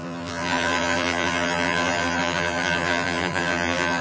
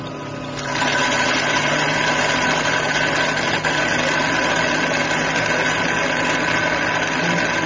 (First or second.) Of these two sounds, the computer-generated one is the first